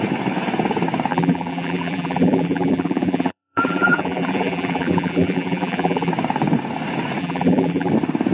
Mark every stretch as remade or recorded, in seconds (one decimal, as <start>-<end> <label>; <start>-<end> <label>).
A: 0.0-1.1 recorded; 1.1-6.1 remade; 6.1-7.2 recorded; 7.2-7.9 remade; 7.9-8.3 recorded